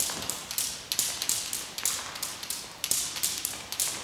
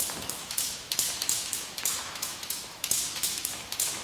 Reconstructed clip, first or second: second